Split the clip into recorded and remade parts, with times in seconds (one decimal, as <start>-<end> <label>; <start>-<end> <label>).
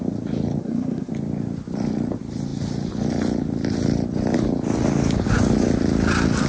0.0-0.6 recorded; 0.6-1.1 remade; 1.1-6.5 recorded